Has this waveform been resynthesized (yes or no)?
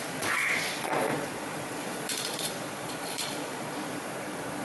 yes